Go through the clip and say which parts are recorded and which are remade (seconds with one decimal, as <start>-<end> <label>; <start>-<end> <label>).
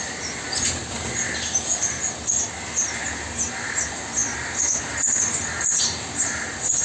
0.0-6.8 recorded